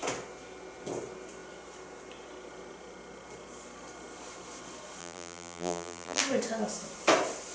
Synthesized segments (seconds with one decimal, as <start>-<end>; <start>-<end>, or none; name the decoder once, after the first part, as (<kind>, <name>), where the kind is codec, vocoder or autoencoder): 5.0-6.2 (vocoder, BigVGAN v2)